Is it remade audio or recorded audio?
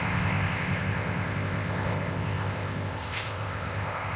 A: remade